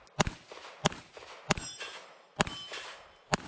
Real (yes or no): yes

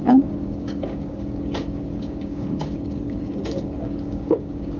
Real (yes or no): no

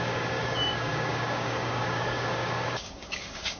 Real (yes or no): no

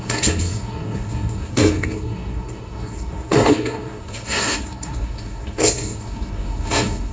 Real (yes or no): no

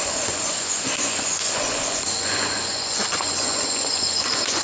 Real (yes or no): no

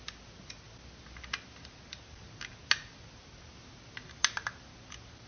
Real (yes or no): yes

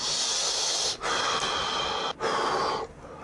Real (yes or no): no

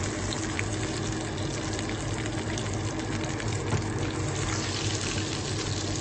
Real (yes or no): yes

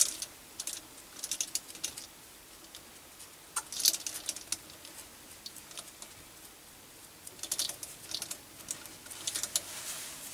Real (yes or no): yes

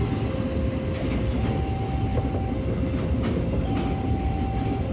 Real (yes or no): yes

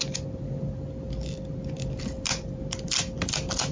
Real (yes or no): yes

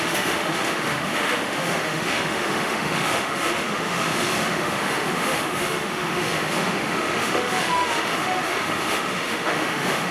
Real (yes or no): no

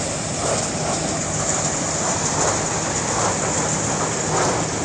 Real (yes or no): yes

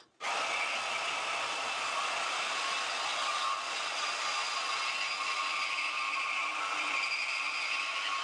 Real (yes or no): yes